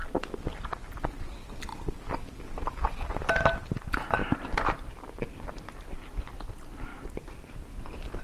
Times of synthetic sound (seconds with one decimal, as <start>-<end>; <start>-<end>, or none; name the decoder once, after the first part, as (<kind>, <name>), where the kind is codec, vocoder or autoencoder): 0.0-1.1 (vocoder, BigVGAN v2); 1.7-2.5; 4.2-4.9